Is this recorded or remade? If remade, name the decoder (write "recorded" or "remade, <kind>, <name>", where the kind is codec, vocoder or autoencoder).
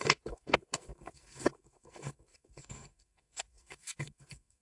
remade, codec, SNAC